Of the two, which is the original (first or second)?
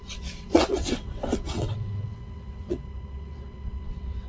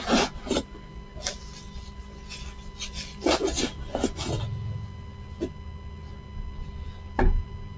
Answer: second